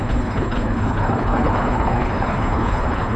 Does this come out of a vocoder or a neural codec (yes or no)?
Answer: yes